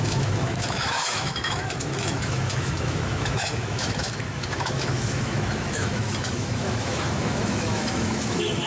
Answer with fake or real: fake